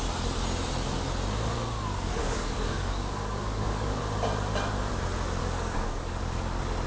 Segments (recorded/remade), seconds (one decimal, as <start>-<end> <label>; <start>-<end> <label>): 0.0-2.2 recorded; 2.2-4.0 remade; 4.0-5.4 recorded; 5.4-6.2 remade; 6.2-6.9 recorded